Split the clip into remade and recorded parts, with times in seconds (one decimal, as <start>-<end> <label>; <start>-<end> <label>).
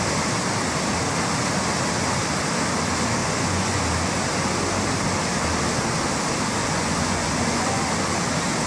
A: 0.0-3.2 recorded; 3.2-3.8 remade; 3.8-6.6 recorded; 6.6-7.8 remade; 7.8-8.7 recorded